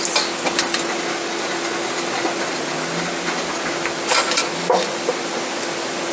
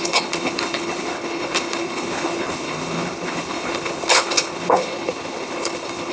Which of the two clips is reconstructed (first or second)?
second